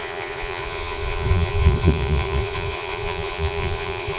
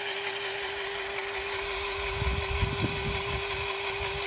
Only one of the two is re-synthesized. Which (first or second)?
first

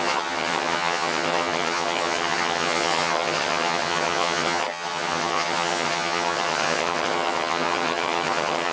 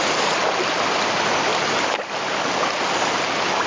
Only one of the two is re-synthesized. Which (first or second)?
first